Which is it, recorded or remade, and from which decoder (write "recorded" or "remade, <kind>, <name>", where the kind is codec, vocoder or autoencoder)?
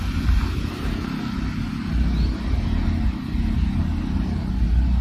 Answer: recorded